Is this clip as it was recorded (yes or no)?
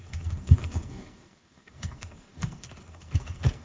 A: no